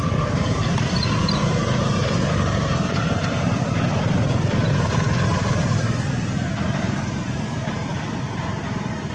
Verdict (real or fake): fake